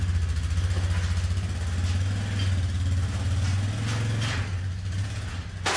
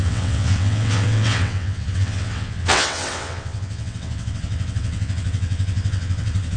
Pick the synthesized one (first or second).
second